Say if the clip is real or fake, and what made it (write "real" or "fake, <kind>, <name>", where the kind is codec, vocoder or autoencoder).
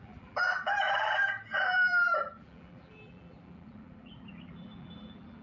fake, vocoder, BigVGAN v2